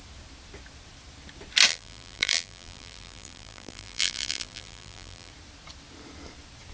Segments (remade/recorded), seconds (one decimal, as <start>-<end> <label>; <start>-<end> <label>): 0.0-1.7 recorded; 1.7-5.3 remade; 5.3-6.7 recorded